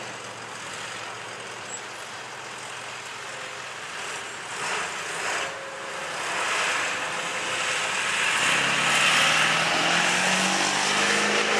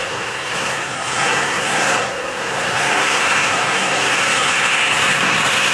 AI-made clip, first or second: second